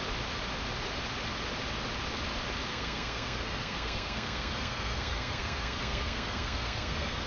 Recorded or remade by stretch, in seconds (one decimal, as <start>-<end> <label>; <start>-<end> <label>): 0.0-2.7 recorded; 2.7-7.3 remade